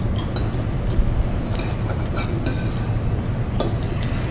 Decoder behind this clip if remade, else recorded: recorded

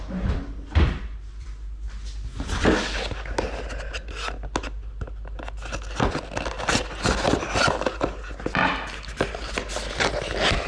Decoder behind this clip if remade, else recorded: recorded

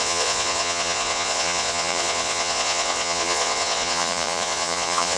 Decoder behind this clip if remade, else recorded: remade, vocoder, Vocos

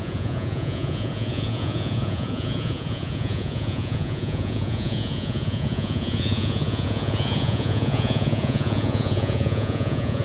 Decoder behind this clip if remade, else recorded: remade, vocoder, Vocos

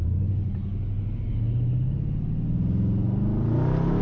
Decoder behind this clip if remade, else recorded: recorded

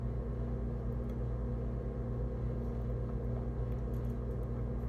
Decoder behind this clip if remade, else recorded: recorded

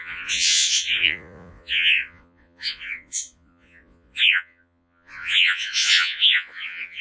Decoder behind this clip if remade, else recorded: remade, vocoder, Vocos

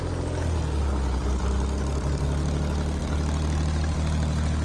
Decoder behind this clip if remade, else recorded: recorded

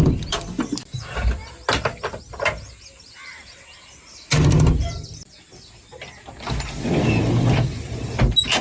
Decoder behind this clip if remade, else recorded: recorded